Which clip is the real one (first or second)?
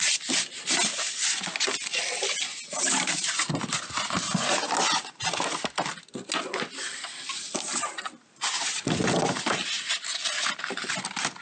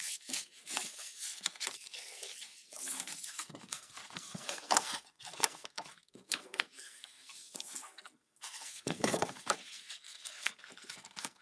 first